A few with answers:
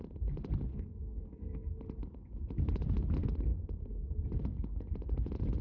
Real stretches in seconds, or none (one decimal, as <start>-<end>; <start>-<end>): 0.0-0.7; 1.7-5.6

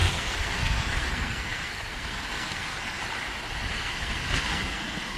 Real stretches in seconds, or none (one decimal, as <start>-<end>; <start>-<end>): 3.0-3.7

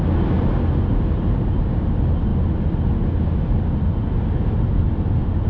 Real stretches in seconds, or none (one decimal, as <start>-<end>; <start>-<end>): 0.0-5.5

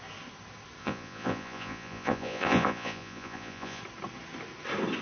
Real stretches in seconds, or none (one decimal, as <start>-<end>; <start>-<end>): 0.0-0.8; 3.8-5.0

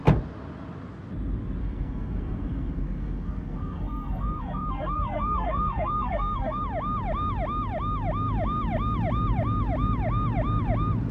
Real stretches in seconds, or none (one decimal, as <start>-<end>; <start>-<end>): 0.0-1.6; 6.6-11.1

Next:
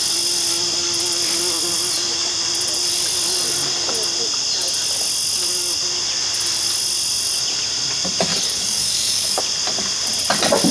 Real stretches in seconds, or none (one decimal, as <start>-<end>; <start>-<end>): 0.0-8.3; 9.4-10.7